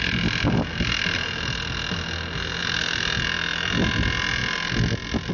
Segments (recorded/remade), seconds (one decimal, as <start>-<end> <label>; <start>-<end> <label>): 0.0-5.3 recorded